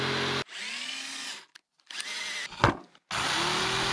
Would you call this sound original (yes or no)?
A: yes